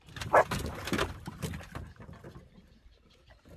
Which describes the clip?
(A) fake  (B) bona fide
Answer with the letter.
A